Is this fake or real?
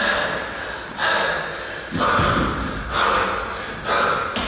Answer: real